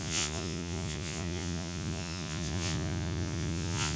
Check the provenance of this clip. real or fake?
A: fake